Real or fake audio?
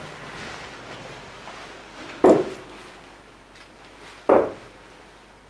real